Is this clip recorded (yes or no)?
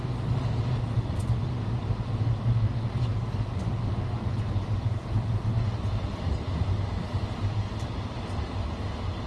yes